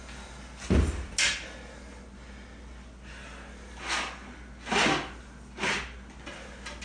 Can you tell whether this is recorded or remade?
recorded